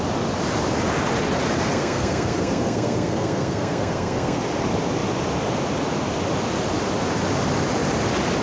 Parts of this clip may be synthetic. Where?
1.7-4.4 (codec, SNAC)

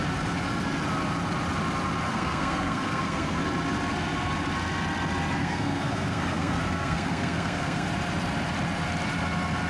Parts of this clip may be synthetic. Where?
2.1-3.4 (codec, SNAC); 5.4-7.9

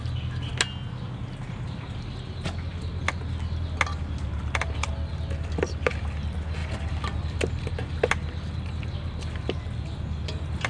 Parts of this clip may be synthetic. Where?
none

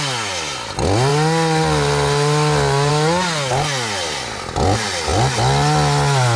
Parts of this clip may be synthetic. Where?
none

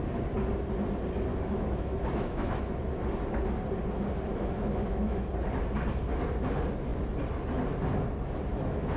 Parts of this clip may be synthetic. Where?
1.3-2.6 (autoencoder, DAC-VAE); 4.3-5.3; 8.5-9.0

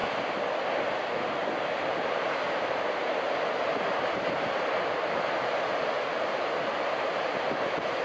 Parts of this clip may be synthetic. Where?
none

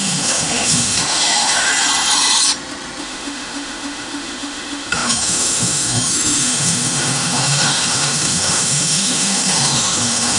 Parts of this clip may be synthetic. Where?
0.0-1.7 (autoencoder, DAC-VAE); 3.0-10.4

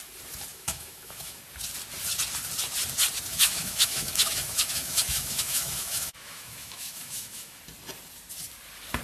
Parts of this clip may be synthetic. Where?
0.5-1.4 (autoencoder, DAC-VAE); 3.3-7.6